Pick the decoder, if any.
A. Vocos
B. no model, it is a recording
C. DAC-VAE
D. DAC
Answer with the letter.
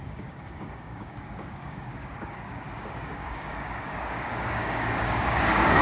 D